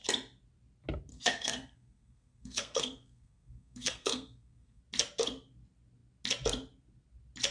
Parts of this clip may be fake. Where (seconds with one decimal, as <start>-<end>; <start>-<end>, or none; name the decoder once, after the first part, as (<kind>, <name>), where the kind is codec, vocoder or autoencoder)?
1.1-4.8 (codec, SNAC)